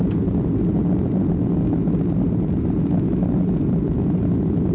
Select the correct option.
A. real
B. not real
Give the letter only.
A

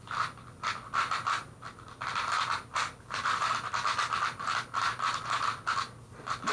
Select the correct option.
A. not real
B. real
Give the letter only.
B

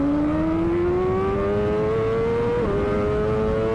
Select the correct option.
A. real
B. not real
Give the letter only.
A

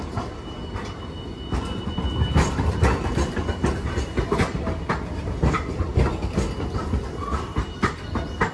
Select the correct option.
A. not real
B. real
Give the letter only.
B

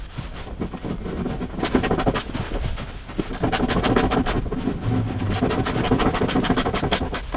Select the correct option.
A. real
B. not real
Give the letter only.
A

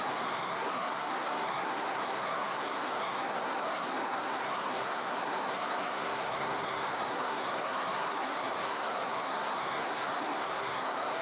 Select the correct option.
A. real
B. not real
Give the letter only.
B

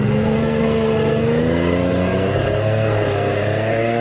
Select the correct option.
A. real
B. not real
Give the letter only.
B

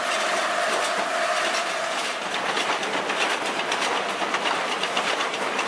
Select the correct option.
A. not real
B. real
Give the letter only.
B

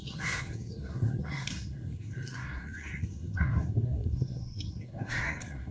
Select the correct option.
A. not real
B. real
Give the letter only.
A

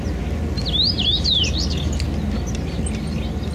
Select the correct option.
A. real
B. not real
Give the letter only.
A